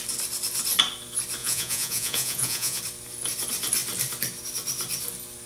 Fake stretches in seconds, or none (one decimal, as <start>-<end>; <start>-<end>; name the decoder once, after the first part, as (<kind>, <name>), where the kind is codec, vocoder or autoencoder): 1.4-2.8 (vocoder, Vocos)